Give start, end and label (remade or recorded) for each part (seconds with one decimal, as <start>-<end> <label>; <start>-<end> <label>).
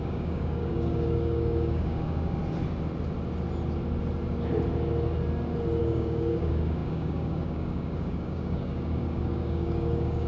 0.0-2.4 remade; 2.4-5.8 recorded; 5.8-10.3 remade